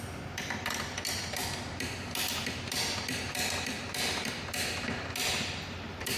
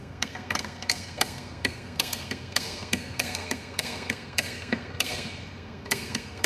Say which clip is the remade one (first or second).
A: second